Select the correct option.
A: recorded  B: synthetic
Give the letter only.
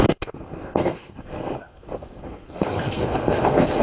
B